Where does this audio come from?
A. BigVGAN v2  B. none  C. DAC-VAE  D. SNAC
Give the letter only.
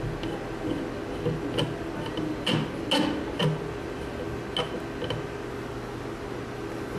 B